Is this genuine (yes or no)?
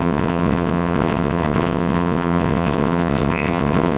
no